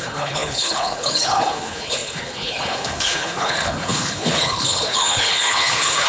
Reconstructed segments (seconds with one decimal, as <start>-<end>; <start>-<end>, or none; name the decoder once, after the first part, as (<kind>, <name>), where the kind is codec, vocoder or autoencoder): 0.0-6.1 (codec, HILCodec)